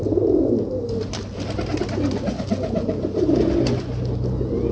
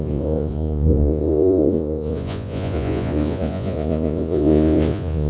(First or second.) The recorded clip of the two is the first